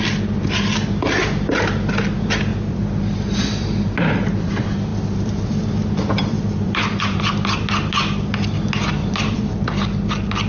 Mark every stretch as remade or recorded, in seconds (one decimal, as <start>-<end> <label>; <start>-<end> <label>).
0.0-2.5 recorded; 2.5-4.5 remade; 4.5-4.9 recorded; 4.9-7.0 remade; 7.0-9.0 recorded; 9.0-9.8 remade; 9.8-10.5 recorded